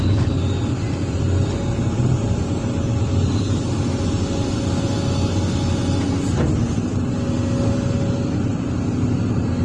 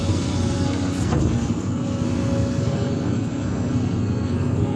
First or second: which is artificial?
second